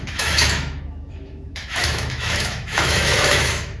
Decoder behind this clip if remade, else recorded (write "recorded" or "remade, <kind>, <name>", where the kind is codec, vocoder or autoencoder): remade, autoencoder, DAC-VAE